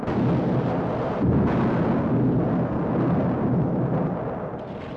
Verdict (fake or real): real